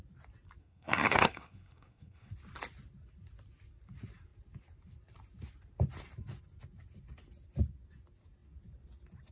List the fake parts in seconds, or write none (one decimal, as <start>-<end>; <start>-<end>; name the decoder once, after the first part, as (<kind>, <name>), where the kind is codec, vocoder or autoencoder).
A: 0.6-2.3 (codec, SNAC)

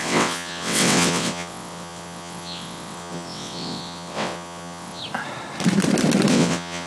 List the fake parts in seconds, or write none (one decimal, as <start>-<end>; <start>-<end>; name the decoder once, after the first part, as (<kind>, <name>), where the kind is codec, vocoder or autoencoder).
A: 0.0-5.0 (vocoder, WaveNeXt); 6.3-6.9

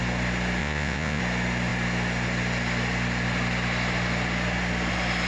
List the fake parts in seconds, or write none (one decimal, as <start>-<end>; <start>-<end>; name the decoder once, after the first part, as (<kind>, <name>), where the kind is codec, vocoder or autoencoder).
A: 0.6-1.2 (vocoder, Vocos)